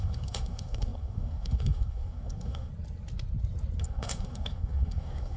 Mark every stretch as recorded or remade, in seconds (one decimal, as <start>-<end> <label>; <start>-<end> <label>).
0.0-2.7 remade; 2.7-3.8 recorded; 3.8-5.4 remade